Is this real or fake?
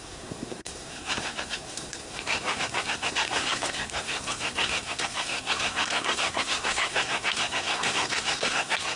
fake